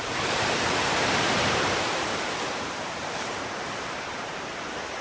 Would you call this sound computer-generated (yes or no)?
yes